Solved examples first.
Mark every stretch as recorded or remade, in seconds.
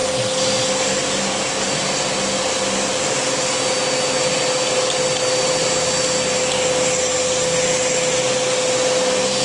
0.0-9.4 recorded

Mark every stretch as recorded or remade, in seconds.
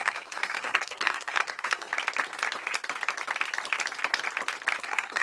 0.0-1.9 remade; 1.9-4.8 recorded; 4.8-5.2 remade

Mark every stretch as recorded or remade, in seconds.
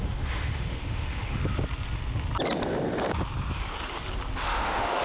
0.0-1.4 remade; 1.4-4.4 recorded; 4.4-5.0 remade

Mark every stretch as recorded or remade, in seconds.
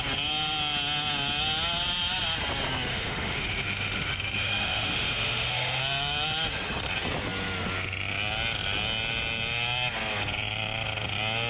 0.0-2.9 recorded; 2.9-5.8 remade; 5.8-11.5 recorded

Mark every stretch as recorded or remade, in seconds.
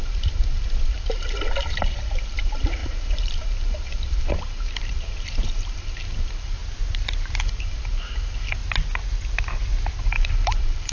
0.0-6.6 remade; 6.6-7.4 recorded; 7.4-8.6 remade; 8.6-10.0 recorded; 10.0-10.9 remade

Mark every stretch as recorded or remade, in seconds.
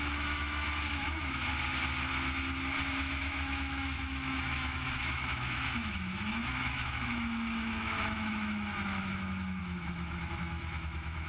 0.0-1.5 remade; 1.5-3.2 recorded; 3.2-11.3 remade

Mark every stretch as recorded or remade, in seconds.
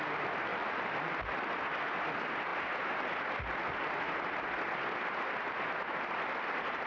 0.0-0.5 recorded; 0.5-1.1 remade; 1.1-6.9 recorded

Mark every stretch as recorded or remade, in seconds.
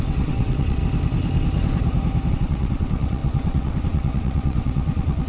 0.0-0.8 remade; 0.8-2.3 recorded; 2.3-5.3 remade